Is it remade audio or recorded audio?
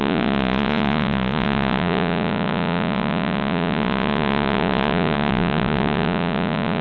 remade